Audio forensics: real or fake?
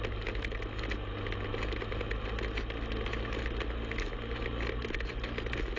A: real